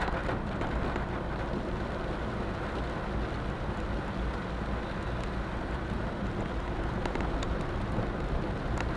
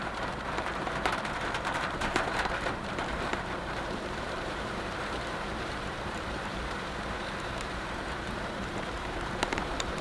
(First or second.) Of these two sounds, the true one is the first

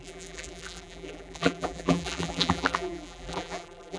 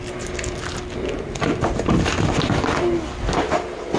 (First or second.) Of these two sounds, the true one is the second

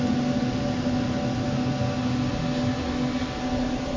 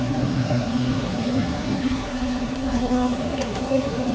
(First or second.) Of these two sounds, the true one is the first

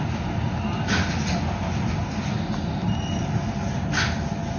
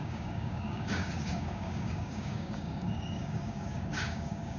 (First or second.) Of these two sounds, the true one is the first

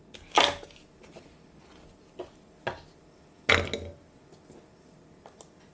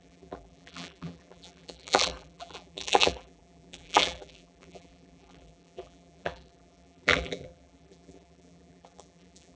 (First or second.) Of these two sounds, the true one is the first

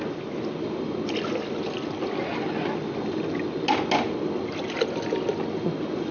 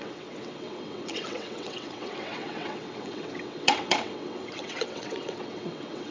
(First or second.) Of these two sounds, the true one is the first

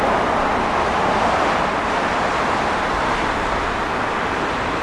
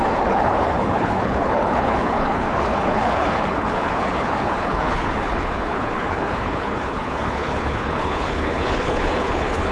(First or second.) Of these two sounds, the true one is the first